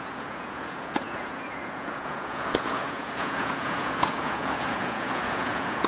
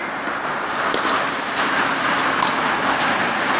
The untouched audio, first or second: second